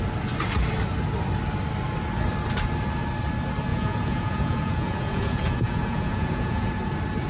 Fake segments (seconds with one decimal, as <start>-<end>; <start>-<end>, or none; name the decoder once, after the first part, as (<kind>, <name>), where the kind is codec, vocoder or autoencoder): 3.7-6.7 (vocoder, Vocos)